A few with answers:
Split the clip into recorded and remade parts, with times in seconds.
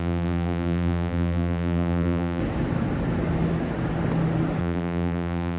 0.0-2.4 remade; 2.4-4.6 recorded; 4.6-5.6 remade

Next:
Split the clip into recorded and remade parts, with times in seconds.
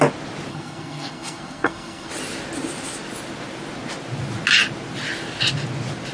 0.0-0.5 recorded; 0.5-2.1 remade; 2.1-6.1 recorded